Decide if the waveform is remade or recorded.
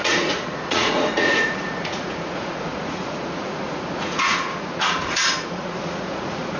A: remade